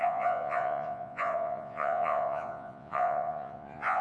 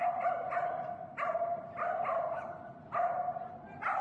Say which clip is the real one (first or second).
second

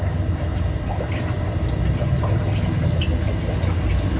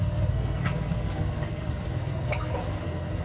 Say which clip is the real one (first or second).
first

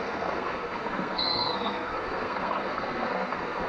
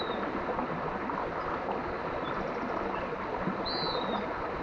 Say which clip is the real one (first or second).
second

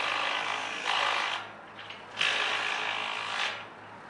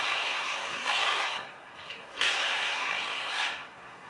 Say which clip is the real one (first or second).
first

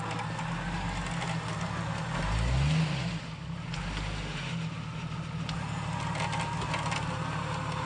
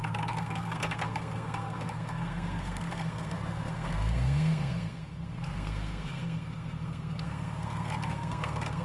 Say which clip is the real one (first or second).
first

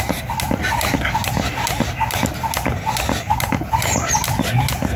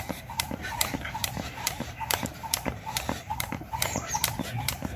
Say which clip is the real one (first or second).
first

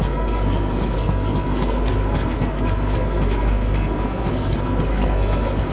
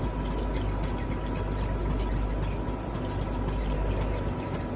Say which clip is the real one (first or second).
second